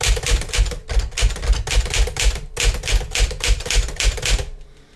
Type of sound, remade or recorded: recorded